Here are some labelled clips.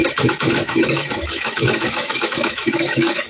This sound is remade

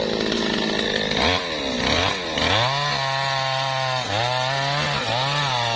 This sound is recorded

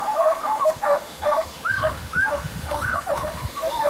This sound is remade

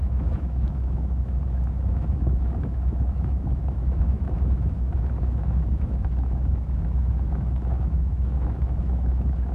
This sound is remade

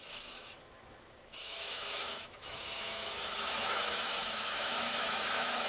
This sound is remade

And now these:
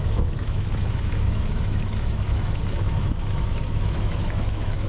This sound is remade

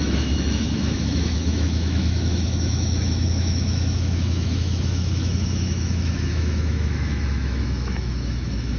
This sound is remade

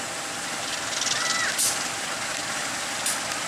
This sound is recorded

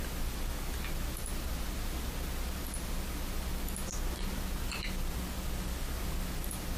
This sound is recorded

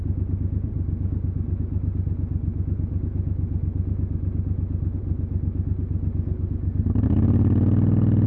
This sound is recorded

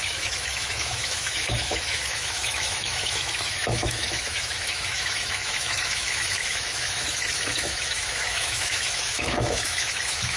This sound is remade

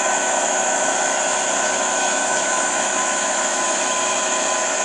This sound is remade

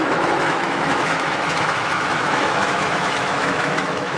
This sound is remade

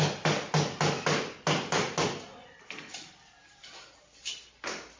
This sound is recorded